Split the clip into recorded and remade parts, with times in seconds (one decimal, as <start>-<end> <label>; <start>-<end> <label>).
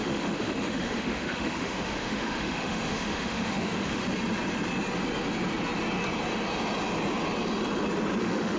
0.0-4.0 remade; 4.0-8.2 recorded; 8.2-8.6 remade